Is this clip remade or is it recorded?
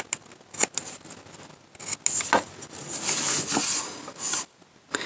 recorded